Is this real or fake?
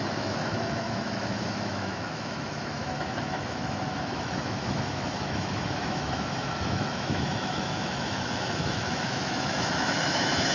fake